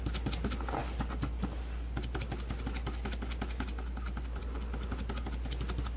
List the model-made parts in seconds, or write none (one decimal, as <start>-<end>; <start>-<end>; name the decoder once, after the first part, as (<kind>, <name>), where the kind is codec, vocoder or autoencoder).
none